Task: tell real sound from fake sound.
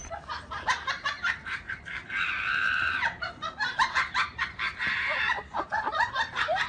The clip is fake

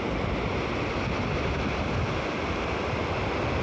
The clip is real